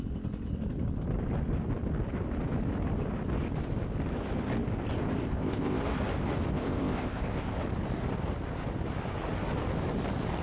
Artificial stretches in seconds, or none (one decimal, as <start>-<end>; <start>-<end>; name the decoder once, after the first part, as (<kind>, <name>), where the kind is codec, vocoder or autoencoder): 5.2-5.8 (codec, ZipCodec); 6.5-7.6